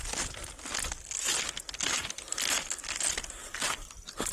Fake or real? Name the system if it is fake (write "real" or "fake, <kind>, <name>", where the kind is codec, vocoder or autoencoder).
real